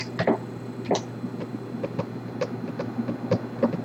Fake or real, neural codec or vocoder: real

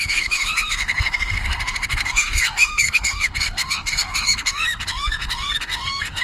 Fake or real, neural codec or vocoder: fake, autoencoder, DAC-VAE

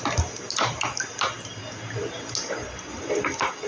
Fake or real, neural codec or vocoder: real